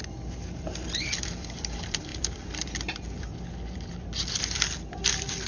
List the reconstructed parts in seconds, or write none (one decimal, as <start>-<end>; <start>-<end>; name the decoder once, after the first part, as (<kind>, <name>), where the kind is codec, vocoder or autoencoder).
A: 0.0-5.5 (vocoder, BigVGAN v2)